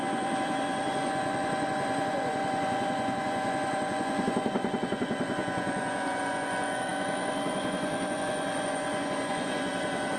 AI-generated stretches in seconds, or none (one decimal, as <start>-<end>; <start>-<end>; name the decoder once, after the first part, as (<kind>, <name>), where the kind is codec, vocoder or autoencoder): 0.0-10.2 (vocoder, Vocos)